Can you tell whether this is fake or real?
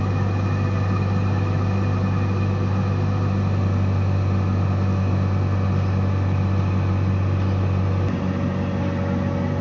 real